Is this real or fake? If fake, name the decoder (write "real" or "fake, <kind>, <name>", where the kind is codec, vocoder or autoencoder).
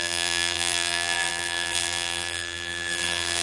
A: fake, vocoder, BigVGAN v2